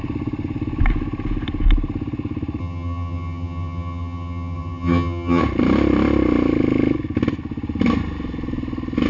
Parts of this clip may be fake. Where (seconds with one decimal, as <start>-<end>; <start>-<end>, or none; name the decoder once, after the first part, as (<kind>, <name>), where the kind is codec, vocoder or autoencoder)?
2.6-5.4 (vocoder, HiFi-GAN)